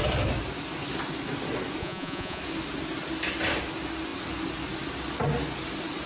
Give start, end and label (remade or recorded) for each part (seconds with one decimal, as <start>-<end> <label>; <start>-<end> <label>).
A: 0.0-1.8 recorded; 1.8-2.4 remade; 2.4-6.1 recorded